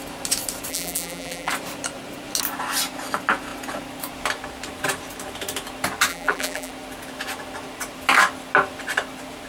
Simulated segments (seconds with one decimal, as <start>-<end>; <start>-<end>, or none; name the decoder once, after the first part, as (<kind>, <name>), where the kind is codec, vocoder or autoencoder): 0.7-1.5 (vocoder, BigVGAN v2); 6.1-6.7